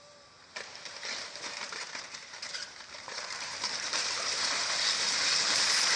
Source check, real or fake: fake